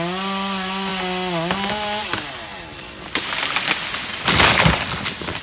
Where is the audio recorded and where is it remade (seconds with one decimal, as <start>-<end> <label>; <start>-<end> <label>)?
0.0-5.4 recorded